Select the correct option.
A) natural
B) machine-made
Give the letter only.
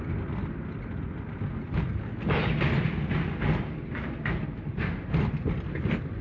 A